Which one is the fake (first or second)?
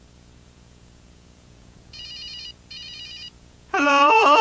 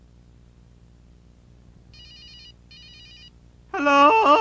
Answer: first